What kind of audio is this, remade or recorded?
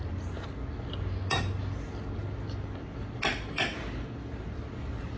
recorded